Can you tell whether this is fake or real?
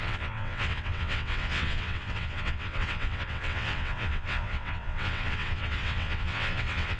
fake